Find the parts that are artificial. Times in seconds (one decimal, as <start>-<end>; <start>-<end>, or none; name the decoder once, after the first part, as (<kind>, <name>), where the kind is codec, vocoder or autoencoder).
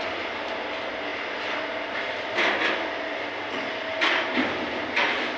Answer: none